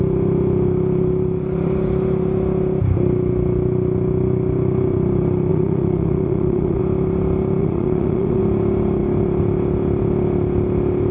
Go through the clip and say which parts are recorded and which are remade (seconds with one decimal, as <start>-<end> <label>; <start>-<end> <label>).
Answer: 0.0-5.5 recorded; 5.5-6.8 remade; 6.8-7.6 recorded; 7.6-8.4 remade; 8.4-11.1 recorded